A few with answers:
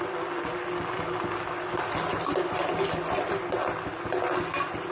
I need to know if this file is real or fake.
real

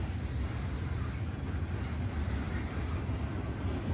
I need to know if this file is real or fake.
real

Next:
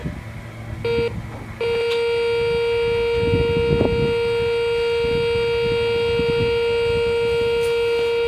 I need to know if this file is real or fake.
real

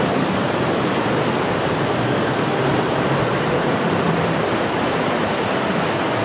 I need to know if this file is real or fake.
fake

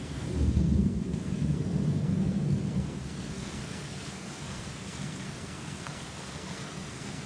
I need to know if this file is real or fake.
fake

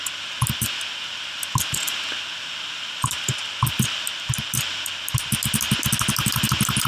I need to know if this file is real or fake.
real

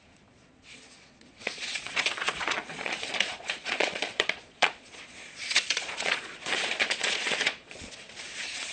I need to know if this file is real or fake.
fake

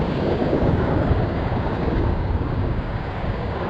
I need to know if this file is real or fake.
fake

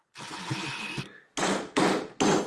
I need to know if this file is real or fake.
real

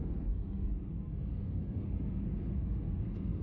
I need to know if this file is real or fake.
fake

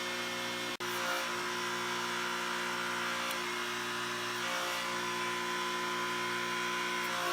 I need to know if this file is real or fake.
real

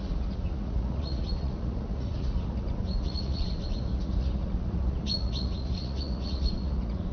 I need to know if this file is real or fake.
fake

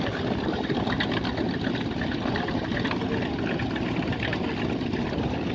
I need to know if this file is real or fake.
real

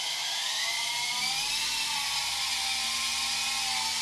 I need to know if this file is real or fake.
real